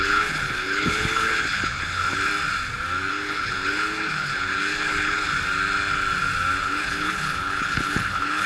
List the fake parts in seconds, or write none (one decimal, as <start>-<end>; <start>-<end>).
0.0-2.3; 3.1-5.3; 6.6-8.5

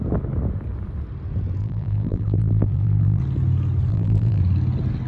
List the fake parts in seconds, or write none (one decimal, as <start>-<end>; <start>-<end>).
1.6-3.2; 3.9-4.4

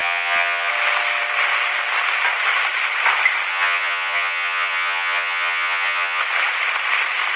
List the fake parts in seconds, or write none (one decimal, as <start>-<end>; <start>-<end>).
0.0-0.7; 3.5-6.2

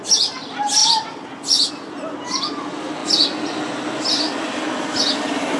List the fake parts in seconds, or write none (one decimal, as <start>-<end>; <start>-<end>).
none

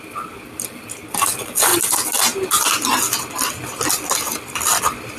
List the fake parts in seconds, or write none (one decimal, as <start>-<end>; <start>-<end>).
none

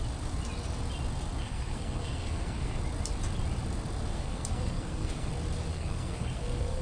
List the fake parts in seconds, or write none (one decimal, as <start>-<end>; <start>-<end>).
1.4-2.8; 4.1-5.3; 5.7-6.8